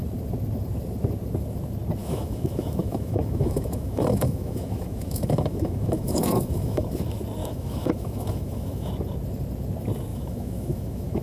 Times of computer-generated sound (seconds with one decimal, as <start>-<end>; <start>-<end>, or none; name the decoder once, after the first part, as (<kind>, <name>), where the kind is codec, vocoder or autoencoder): 2.0-7.0 (autoencoder, DAC-VAE); 7.4-8.9; 10.1-11.2